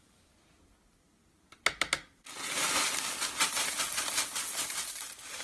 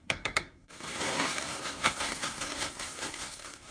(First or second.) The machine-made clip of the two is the second